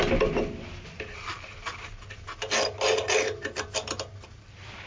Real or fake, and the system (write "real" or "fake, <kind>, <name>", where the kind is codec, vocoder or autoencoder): real